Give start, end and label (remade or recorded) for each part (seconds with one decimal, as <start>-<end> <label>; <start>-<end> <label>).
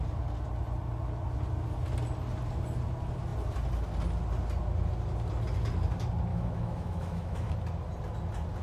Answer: 0.0-6.3 recorded; 6.3-7.5 remade; 7.5-8.6 recorded